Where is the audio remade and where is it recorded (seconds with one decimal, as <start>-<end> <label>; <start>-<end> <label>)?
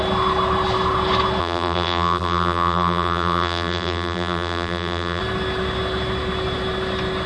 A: 0.0-1.4 recorded; 1.4-5.2 remade; 5.2-7.3 recorded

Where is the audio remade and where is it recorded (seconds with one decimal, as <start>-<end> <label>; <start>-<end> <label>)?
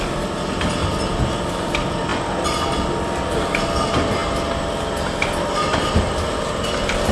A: 0.0-0.8 recorded; 0.8-1.3 remade; 1.3-7.1 recorded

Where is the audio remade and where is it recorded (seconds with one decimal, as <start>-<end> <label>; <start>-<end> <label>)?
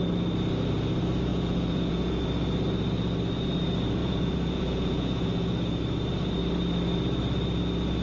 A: 0.0-1.3 recorded; 1.3-2.2 remade; 2.2-4.0 recorded; 4.0-5.8 remade; 5.8-8.0 recorded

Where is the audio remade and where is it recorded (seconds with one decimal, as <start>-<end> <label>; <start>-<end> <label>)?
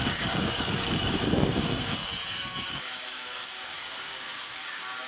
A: 0.0-2.0 remade; 2.0-2.7 recorded; 2.7-5.1 remade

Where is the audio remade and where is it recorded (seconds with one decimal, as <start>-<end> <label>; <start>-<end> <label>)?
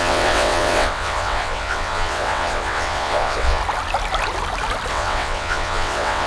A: 0.0-3.6 remade; 3.6-4.9 recorded; 4.9-6.3 remade